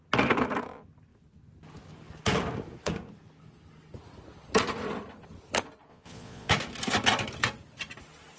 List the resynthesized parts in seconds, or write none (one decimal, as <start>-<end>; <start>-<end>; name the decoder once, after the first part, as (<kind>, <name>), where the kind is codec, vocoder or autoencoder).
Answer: 5.9-6.5 (vocoder, Vocos)